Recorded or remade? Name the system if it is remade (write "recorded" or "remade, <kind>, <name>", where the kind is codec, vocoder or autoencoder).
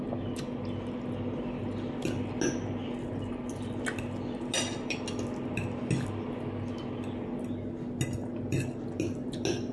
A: recorded